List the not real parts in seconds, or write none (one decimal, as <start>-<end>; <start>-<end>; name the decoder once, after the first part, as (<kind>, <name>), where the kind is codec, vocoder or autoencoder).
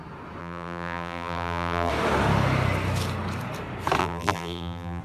0.4-1.9 (vocoder, BigVGAN v2); 4.0-5.0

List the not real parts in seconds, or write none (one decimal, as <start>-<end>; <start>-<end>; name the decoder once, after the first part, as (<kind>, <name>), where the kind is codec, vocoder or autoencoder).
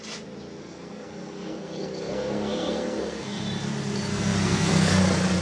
0.6-3.4 (codec, SNAC); 4.1-5.0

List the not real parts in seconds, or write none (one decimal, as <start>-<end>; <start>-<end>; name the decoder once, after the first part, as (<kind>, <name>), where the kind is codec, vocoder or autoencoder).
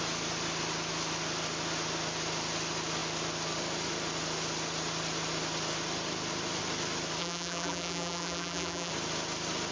7.2-8.9 (vocoder, BigVGAN v2)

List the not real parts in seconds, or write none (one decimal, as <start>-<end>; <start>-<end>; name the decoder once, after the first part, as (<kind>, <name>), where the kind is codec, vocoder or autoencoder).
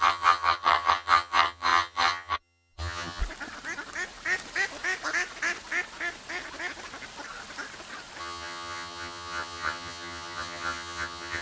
0.0-3.2 (vocoder, HiFi-GAN); 8.2-11.4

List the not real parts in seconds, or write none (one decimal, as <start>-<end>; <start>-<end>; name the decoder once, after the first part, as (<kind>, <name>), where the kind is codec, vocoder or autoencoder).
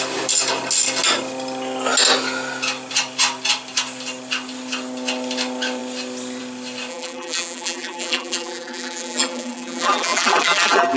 6.9-11.0 (vocoder, BigVGAN v2)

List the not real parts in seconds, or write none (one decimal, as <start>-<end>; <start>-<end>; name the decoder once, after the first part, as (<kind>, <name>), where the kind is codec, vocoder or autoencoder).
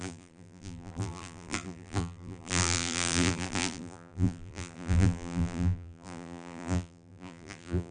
0.0-7.9 (vocoder, BigVGAN v2)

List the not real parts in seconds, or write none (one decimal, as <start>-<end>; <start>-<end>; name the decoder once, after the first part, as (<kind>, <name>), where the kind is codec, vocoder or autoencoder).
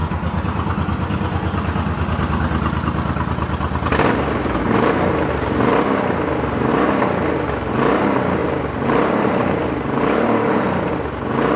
8.4-10.9 (vocoder, BigVGAN v2)